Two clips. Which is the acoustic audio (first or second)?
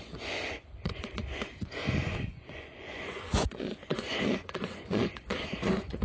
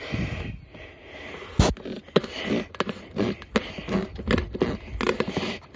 second